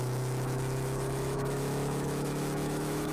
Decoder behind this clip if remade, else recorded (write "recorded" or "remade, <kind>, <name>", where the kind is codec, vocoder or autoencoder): remade, autoencoder, DAC-VAE